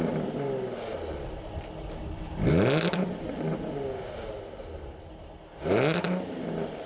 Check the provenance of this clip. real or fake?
real